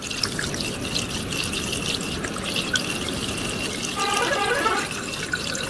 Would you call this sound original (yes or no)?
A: yes